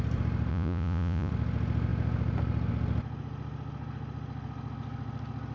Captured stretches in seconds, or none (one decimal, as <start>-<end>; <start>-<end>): 0.0-0.5; 1.3-5.5